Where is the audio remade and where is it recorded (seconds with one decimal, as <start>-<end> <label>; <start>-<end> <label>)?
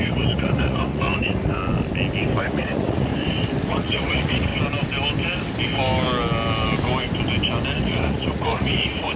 0.0-1.6 remade; 1.6-2.4 recorded; 2.4-3.1 remade; 3.1-3.7 recorded; 3.7-4.5 remade; 4.5-7.8 recorded; 7.8-9.2 remade